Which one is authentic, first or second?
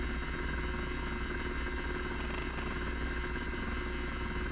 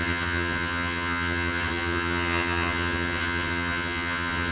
first